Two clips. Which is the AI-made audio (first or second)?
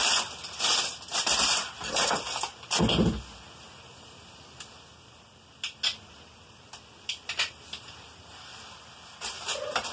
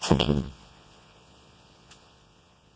second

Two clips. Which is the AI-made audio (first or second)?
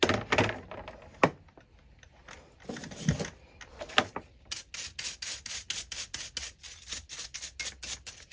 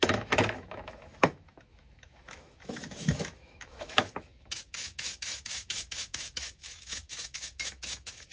second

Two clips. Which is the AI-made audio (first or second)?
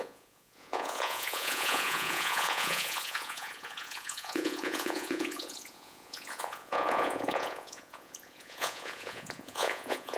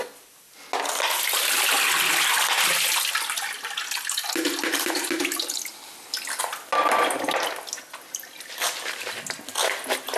first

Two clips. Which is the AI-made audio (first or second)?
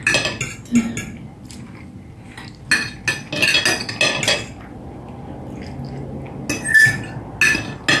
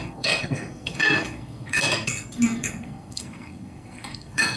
second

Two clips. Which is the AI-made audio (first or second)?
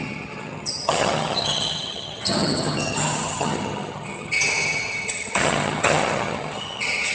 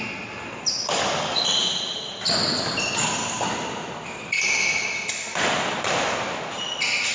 first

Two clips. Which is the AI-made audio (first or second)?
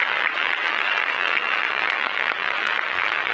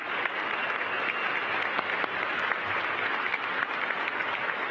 first